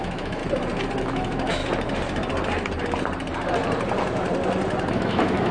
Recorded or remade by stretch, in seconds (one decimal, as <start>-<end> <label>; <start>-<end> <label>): 0.0-0.4 remade; 0.4-1.0 recorded; 1.0-1.6 remade; 1.6-4.9 recorded; 4.9-5.5 remade